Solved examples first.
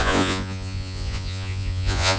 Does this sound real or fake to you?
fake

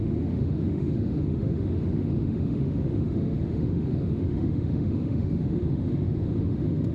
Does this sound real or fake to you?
fake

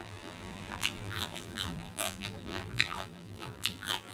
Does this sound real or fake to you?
fake